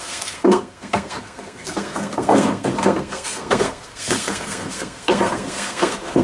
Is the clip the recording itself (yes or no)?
no